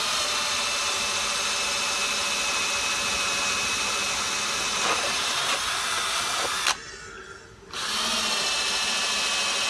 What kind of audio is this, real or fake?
real